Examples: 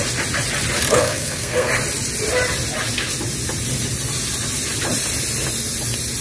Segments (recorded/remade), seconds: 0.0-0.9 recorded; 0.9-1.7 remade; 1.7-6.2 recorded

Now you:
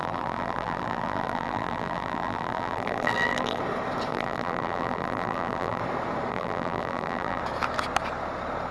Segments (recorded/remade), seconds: 0.0-3.6 remade; 3.6-4.1 recorded; 4.1-5.8 remade; 5.8-6.3 recorded; 6.3-7.4 remade; 7.4-8.7 recorded

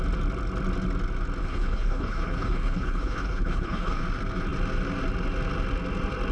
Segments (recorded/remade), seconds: 0.0-1.4 recorded; 1.4-4.0 remade; 4.0-6.3 recorded

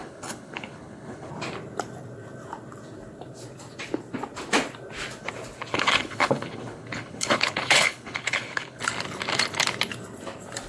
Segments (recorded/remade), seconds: 0.0-1.3 remade; 1.3-5.7 recorded; 5.7-8.8 remade; 8.8-10.7 recorded

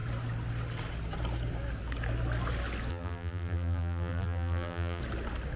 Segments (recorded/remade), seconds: 0.0-2.9 recorded; 2.9-5.0 remade; 5.0-5.6 recorded

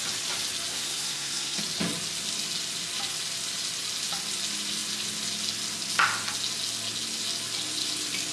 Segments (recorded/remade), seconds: 0.0-0.7 recorded; 0.7-1.6 remade; 1.6-8.3 recorded